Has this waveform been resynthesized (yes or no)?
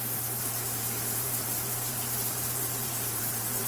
yes